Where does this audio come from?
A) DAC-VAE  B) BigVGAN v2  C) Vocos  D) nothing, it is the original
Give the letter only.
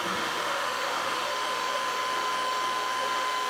A